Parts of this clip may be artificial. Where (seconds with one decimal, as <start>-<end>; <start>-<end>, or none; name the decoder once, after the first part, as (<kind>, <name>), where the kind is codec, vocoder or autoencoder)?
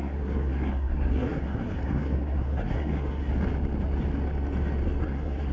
0.0-3.3 (codec, SNAC); 5.0-5.5